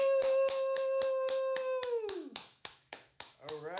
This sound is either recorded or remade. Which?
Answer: remade